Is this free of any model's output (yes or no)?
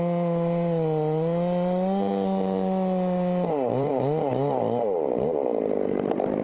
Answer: no